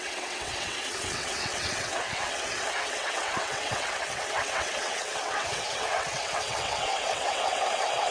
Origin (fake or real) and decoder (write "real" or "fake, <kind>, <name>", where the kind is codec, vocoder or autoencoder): fake, vocoder, WaveNeXt